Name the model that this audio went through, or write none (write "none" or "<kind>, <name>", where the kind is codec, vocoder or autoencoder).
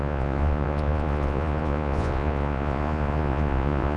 vocoder, Vocos